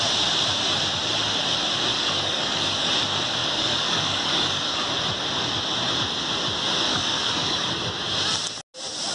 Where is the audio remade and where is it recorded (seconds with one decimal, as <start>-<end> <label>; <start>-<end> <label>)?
0.0-1.9 recorded; 1.9-2.9 remade; 2.9-3.4 recorded; 3.4-4.9 remade; 4.9-6.9 recorded; 6.9-7.7 remade; 7.7-9.1 recorded